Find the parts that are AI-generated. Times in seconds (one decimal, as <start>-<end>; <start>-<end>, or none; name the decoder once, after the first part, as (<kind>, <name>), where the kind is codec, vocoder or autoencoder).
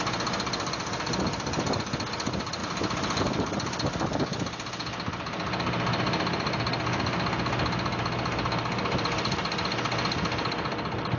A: none